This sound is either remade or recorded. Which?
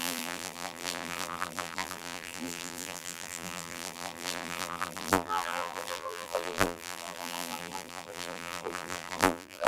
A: remade